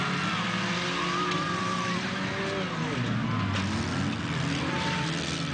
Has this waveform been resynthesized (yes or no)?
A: no